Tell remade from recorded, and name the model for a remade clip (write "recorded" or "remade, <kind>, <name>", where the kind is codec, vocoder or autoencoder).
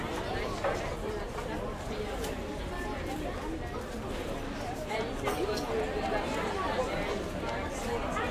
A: recorded